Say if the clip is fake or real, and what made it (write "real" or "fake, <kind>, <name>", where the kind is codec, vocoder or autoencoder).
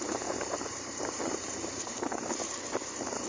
fake, vocoder, BigVGAN v2